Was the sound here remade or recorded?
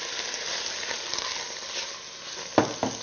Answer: recorded